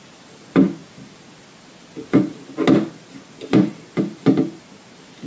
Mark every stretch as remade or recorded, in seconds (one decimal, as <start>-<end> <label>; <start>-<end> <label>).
0.0-5.3 recorded